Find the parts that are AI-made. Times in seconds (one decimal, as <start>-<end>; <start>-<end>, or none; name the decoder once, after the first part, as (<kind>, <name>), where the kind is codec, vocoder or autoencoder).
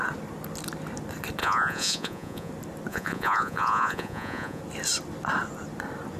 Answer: 1.4-2.5 (vocoder, Vocos); 2.9-4.6